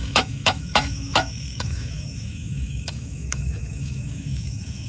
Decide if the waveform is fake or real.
fake